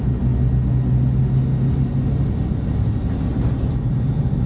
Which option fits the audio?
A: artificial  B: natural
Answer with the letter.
B